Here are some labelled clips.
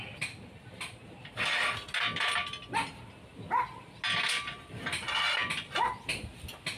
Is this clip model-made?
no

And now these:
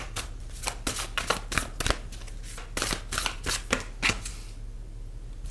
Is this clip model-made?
no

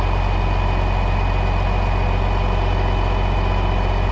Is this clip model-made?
no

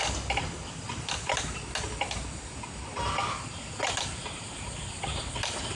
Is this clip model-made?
no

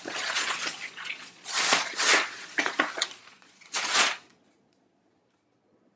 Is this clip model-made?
yes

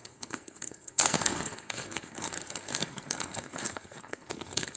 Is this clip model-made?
yes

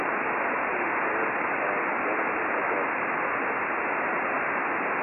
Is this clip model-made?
no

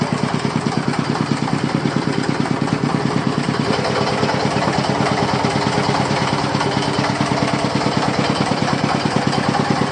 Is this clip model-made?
yes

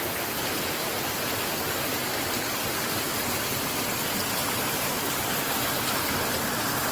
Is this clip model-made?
no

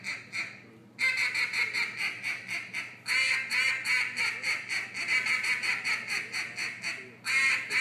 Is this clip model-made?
no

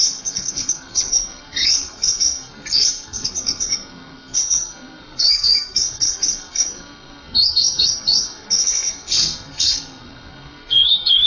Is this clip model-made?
yes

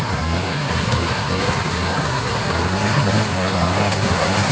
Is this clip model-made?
yes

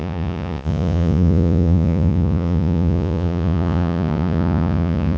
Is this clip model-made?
yes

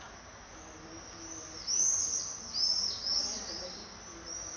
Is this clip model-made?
no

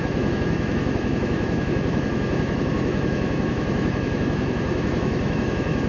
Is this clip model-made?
yes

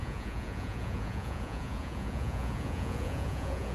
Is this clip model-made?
yes